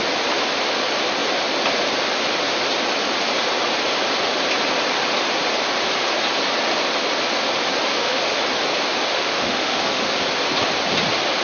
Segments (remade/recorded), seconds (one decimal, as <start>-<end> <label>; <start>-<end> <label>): 0.0-7.9 recorded; 7.9-8.4 remade; 8.4-9.1 recorded; 9.1-10.1 remade; 10.1-11.4 recorded